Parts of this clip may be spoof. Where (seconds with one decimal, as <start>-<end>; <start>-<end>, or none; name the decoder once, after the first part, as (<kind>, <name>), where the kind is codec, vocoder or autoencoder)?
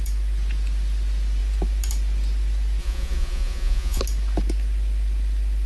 2.8-4.0 (vocoder, Vocos)